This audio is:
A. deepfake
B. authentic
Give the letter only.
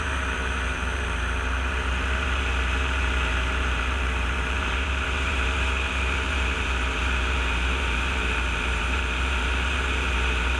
A